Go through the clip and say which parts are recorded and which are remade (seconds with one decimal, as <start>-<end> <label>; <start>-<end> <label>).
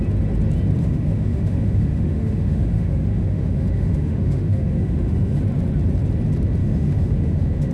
0.0-0.8 recorded; 0.8-5.4 remade; 5.4-6.6 recorded; 6.6-7.7 remade